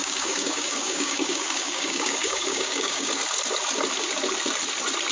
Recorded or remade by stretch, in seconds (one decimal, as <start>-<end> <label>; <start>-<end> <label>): 0.0-3.1 remade; 3.1-5.1 recorded